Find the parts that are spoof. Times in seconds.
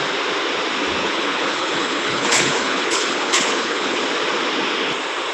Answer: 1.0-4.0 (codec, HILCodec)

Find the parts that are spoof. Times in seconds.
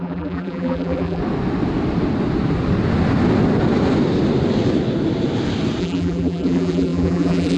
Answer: 0.0-1.2 (vocoder, BigVGAN v2); 5.8-7.6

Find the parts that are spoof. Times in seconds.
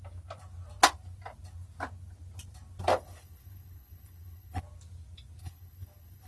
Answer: 2.9-4.6 (codec, HILCodec); 5.4-6.3